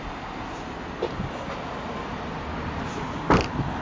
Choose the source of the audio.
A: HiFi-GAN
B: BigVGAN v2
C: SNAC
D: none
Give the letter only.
D